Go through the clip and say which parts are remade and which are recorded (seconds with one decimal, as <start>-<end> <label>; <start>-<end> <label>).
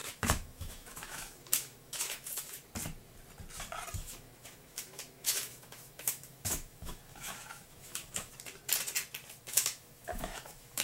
0.0-2.6 remade; 2.6-4.0 recorded; 4.0-8.3 remade; 8.3-9.4 recorded; 9.4-10.8 remade